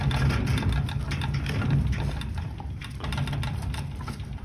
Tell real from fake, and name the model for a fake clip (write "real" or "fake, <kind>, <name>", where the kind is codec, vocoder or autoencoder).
real